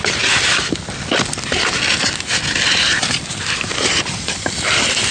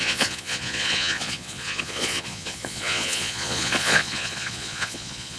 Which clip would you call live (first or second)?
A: first